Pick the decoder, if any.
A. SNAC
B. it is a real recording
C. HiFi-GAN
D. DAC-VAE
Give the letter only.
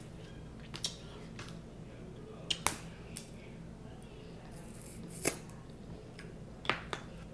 B